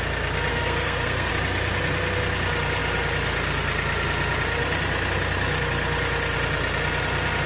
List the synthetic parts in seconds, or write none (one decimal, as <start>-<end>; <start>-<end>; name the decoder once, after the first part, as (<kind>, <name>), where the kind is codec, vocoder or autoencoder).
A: 0.5-1.3 (codec, SNAC)